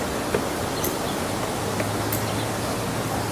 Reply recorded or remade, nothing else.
recorded